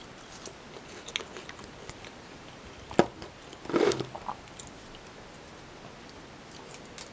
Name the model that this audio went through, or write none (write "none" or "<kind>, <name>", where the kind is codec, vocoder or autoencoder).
none